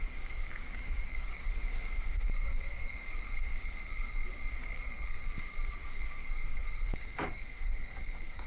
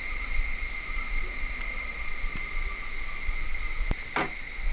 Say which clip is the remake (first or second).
first